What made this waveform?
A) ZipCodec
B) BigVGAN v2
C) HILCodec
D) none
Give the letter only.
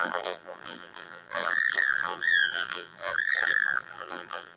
B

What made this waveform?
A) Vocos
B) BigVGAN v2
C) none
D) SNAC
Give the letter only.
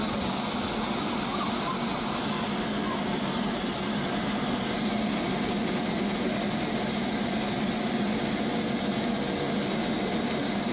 C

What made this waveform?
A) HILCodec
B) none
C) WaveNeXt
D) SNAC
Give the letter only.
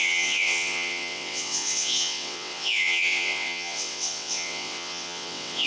C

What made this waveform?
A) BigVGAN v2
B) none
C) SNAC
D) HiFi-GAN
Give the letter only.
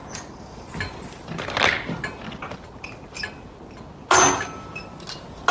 B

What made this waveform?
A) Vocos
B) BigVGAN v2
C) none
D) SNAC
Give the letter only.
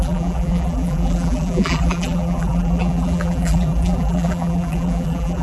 B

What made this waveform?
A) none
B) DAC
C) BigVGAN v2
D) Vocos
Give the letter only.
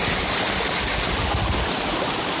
A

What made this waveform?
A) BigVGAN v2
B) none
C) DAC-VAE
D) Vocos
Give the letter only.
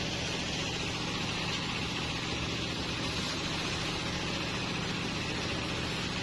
B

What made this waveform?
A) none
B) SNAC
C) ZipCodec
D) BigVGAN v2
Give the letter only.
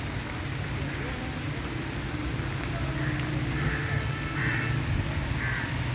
A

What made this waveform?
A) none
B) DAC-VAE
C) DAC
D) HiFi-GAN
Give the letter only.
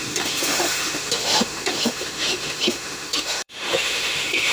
B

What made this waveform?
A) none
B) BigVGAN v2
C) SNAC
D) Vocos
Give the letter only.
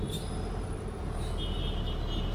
A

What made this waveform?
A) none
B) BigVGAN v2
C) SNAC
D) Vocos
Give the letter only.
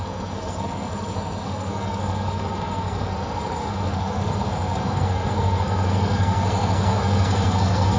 C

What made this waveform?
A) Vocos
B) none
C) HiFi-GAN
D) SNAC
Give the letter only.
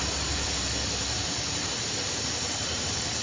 B